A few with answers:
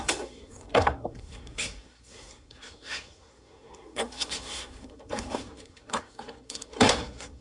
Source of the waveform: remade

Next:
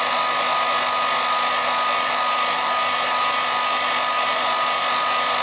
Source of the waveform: recorded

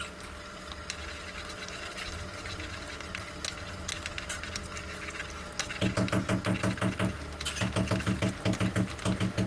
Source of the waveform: recorded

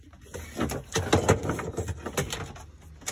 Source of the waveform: recorded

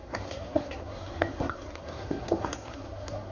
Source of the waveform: remade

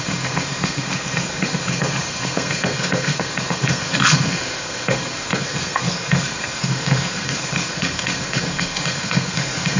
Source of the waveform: remade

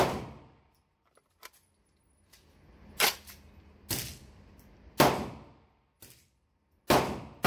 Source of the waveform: recorded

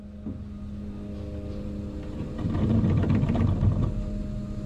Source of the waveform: recorded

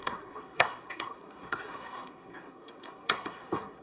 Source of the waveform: remade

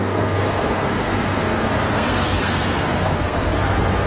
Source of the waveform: remade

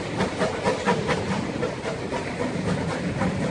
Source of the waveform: recorded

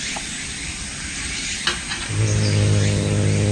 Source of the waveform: recorded